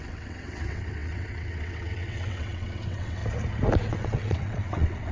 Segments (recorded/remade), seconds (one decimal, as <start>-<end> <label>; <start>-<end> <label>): 0.0-3.2 remade; 3.2-3.9 recorded; 3.9-5.1 remade